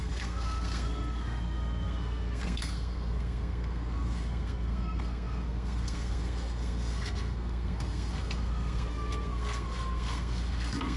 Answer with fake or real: fake